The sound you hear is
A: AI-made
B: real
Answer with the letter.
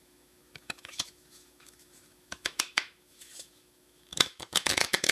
A